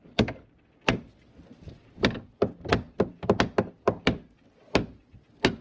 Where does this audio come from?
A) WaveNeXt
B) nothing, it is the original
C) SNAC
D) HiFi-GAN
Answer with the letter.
B